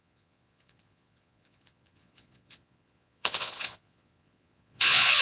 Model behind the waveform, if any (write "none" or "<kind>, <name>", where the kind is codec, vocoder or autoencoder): vocoder, Vocos